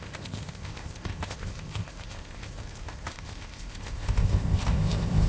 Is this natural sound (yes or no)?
no